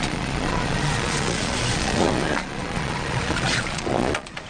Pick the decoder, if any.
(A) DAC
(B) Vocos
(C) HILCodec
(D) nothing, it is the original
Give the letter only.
B